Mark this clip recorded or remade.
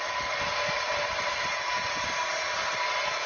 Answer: recorded